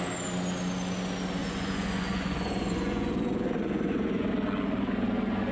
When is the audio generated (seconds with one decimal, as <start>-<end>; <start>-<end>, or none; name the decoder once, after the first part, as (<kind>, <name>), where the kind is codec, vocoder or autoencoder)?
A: 1.4-4.3 (vocoder, Vocos)